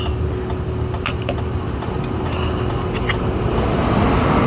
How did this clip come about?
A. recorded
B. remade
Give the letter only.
A